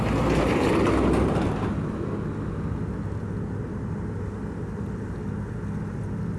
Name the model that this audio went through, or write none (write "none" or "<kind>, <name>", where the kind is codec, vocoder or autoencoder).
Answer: none